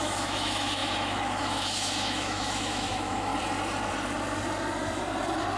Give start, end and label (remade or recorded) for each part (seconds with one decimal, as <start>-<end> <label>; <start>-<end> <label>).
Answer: 0.0-3.3 remade; 3.3-5.6 recorded